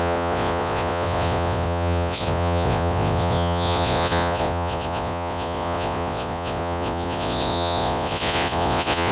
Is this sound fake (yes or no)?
yes